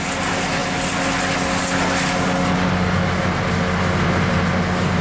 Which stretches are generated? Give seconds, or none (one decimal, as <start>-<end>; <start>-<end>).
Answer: none